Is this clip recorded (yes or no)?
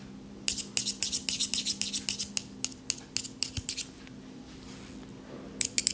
yes